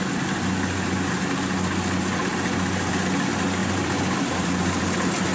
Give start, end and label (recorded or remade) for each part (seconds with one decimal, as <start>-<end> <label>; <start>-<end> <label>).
0.0-3.6 recorded; 3.6-5.3 remade